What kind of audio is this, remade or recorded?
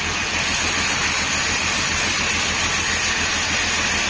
recorded